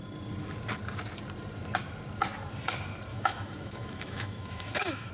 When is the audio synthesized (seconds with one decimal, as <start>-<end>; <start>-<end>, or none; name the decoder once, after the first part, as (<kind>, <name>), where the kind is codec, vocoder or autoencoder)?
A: 3.1-5.1 (autoencoder, DAC-VAE)